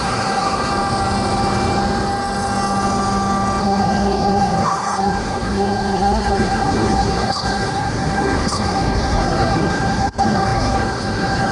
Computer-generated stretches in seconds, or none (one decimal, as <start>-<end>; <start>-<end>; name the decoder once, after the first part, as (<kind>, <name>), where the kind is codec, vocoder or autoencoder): 0.0-0.7 (codec, SNAC); 3.6-11.5